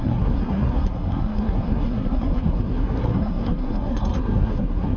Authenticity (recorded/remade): remade